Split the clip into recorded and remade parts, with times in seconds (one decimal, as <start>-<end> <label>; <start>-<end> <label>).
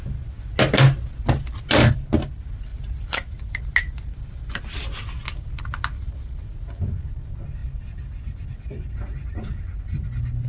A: 0.0-10.5 recorded